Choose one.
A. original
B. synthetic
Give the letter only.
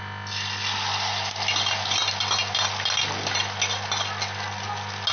A